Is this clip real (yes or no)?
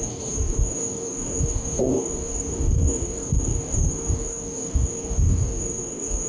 no